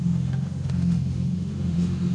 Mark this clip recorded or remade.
remade